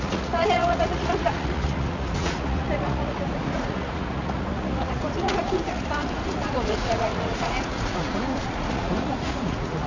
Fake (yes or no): yes